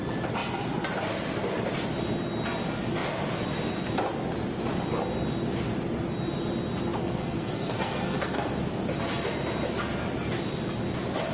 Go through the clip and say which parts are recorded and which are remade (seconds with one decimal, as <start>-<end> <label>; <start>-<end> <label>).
0.0-7.0 recorded; 7.0-8.6 remade; 8.6-11.3 recorded